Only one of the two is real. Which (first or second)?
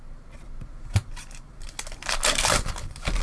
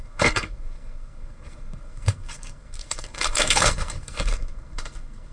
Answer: first